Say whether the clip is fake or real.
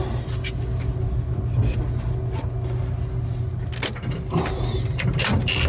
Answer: real